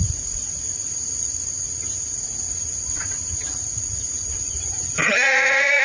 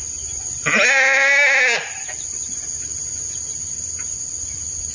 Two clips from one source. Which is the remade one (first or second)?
first